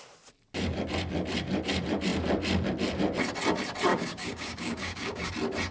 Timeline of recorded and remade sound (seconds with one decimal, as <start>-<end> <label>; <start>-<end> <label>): 0.0-3.9 recorded; 3.9-5.3 remade; 5.3-5.7 recorded